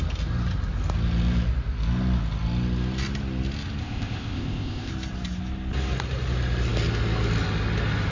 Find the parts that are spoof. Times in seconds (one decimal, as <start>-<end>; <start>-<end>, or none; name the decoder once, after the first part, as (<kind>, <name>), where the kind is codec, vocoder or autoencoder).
3.8-4.9 (codec, ZipCodec)